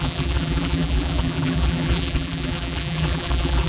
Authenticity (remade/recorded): remade